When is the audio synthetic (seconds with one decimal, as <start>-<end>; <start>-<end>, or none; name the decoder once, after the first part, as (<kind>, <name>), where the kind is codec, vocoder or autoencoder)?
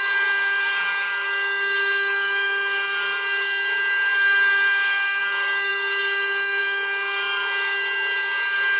0.0-8.8 (codec, DAC)